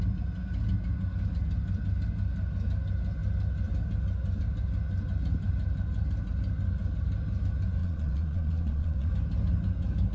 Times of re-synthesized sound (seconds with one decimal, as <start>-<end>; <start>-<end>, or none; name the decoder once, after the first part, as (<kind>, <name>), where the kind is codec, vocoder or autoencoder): 7.8-9.1 (vocoder, Vocos)